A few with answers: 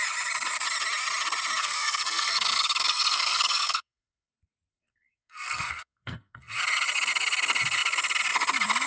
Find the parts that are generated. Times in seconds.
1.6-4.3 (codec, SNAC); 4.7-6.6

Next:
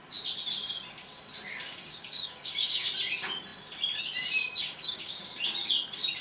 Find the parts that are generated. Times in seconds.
1.8-2.8 (codec, DAC); 4.6-5.2

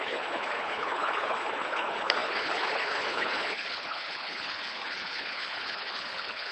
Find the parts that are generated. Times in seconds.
0.0-6.5 (codec, HILCodec)